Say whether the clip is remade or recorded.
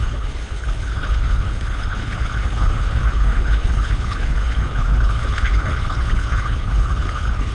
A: remade